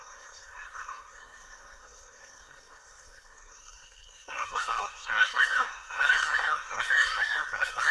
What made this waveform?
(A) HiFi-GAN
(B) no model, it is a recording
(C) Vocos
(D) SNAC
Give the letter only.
D